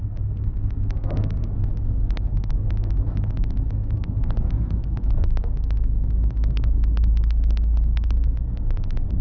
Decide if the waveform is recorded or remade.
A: remade